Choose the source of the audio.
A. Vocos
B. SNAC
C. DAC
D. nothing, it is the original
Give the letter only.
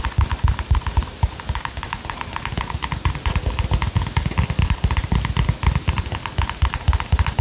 D